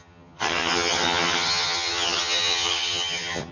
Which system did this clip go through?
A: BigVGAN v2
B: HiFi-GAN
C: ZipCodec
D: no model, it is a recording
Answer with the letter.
B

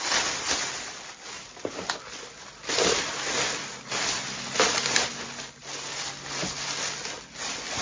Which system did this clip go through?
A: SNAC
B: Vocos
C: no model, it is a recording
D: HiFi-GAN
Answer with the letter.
C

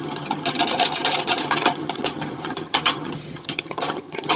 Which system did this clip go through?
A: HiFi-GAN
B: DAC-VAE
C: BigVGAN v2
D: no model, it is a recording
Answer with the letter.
A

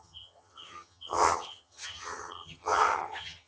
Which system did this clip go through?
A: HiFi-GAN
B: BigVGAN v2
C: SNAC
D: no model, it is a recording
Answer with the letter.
A